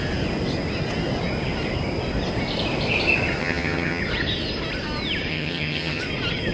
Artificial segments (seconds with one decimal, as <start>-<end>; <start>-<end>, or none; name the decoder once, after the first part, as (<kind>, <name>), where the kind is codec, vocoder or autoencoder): 3.4-4.0 (vocoder, HiFi-GAN); 5.3-6.0